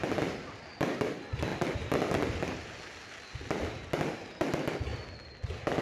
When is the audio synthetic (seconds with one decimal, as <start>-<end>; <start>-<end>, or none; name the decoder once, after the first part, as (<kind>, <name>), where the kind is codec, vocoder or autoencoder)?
none